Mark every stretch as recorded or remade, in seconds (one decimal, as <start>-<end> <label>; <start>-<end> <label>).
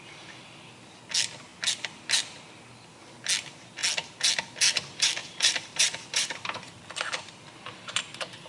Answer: 0.0-5.2 recorded; 5.2-6.8 remade; 6.8-8.5 recorded